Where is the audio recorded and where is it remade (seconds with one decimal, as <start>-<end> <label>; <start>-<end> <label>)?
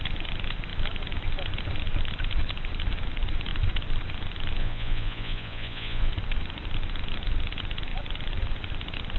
0.0-4.6 recorded; 4.6-6.1 remade; 6.1-9.2 recorded